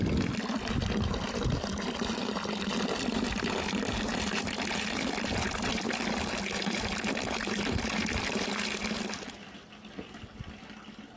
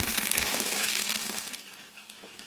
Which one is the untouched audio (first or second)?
first